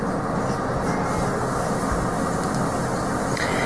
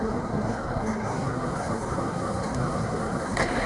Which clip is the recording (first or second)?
first